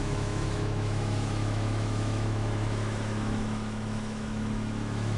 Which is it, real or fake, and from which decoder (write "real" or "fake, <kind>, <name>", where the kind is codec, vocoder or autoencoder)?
fake, autoencoder, DAC-VAE